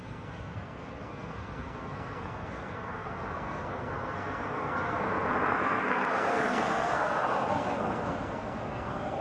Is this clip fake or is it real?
fake